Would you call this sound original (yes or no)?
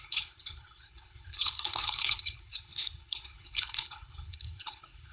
no